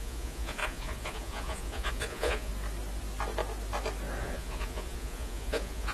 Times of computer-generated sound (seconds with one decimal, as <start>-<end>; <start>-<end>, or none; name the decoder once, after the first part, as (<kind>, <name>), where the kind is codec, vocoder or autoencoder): 0.0-2.5 (vocoder, Vocos); 4.2-5.9